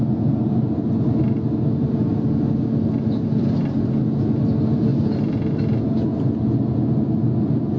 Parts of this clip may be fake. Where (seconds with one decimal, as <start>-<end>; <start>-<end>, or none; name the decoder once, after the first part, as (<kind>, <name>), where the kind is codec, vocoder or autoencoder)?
none